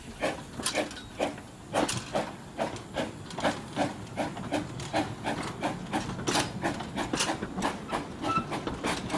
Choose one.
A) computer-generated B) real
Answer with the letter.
B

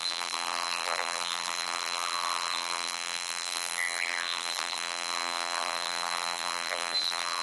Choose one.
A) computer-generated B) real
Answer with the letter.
A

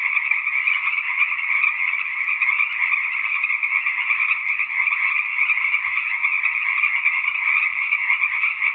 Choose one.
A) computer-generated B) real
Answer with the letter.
A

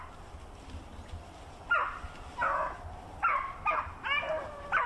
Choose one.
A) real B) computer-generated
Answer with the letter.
A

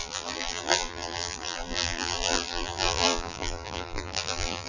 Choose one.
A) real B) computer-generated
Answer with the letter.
B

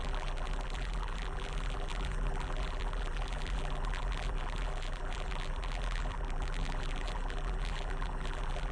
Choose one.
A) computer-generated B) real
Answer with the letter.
A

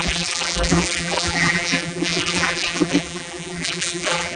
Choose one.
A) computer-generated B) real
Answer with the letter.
A